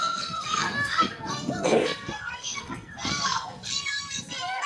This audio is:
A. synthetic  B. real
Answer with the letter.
A